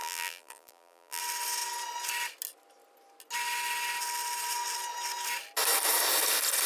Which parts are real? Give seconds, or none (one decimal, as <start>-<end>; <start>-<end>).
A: 1.2-6.7